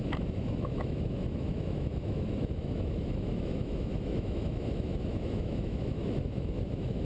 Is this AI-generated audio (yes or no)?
yes